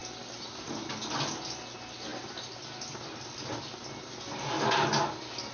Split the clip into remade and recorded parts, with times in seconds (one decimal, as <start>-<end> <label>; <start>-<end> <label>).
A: 0.0-5.5 recorded